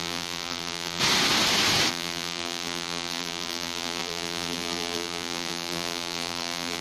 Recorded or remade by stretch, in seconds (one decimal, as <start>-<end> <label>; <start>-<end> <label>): 0.0-1.0 remade; 1.0-1.9 recorded; 1.9-6.8 remade